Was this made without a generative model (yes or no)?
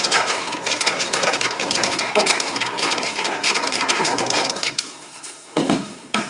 no